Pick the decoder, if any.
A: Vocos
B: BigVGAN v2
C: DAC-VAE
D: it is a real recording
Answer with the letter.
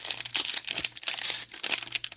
D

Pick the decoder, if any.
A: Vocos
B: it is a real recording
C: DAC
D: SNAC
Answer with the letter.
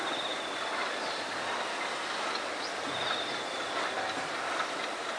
B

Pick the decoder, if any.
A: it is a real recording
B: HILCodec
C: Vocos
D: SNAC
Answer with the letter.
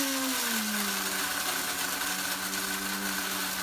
A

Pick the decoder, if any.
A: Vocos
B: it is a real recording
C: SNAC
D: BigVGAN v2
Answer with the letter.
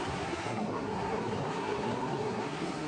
C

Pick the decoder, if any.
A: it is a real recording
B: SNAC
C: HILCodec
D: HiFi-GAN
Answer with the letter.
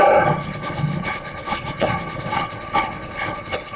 C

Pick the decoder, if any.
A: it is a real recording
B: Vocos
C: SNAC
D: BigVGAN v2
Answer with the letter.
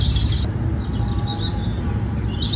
A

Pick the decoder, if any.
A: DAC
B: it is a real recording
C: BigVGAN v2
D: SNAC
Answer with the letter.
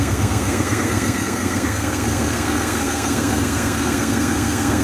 D